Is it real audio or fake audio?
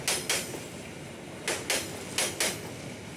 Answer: real